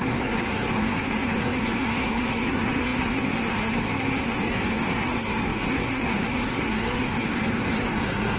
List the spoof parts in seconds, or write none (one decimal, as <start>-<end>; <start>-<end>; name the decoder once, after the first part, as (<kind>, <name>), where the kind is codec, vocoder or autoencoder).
0.0-8.4 (codec, SNAC)